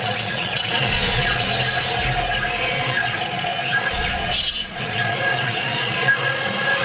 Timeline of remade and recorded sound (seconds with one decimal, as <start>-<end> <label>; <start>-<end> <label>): 0.0-1.5 remade; 1.5-2.6 recorded; 2.6-6.8 remade